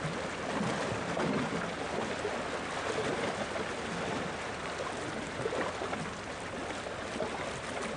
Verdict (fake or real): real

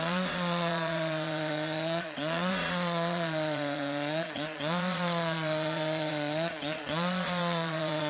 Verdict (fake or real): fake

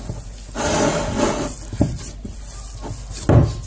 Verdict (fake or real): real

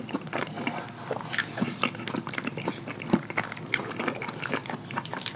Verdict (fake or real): real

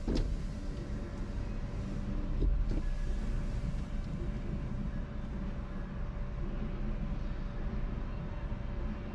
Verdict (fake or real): real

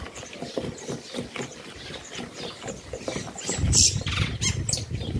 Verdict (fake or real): real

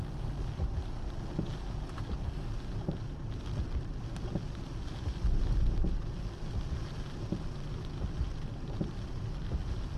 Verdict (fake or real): real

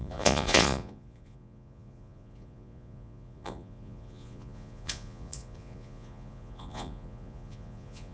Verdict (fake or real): fake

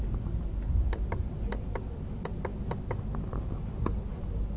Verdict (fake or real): real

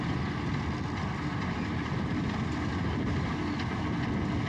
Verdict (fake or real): real